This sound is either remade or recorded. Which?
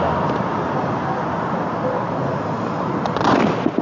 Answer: recorded